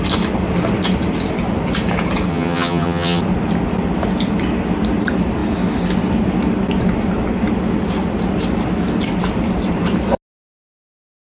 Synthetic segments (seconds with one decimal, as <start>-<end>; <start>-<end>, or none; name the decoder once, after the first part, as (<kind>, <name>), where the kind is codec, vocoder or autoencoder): 2.3-3.2 (vocoder, HiFi-GAN)